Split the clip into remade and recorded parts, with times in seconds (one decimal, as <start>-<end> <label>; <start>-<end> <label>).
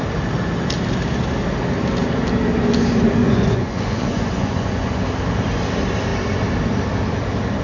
0.0-3.2 recorded; 3.2-5.0 remade; 5.0-7.6 recorded